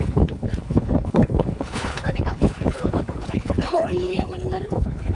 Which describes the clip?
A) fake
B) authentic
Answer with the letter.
A